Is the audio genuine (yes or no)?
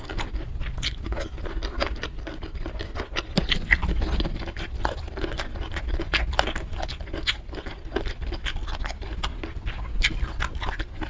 yes